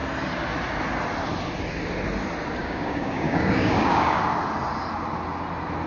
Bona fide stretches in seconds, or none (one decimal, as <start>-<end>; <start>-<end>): 0.0-2.6; 4.2-5.9